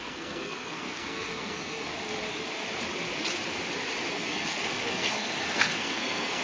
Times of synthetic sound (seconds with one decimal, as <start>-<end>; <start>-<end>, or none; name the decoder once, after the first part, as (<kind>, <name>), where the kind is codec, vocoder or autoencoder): 0.0-1.9 (codec, SNAC); 4.1-6.4